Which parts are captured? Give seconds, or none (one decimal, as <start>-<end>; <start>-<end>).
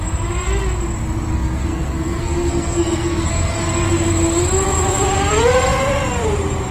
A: 0.0-1.3; 3.3-6.7